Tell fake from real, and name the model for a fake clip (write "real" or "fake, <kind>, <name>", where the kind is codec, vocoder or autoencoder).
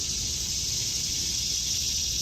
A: real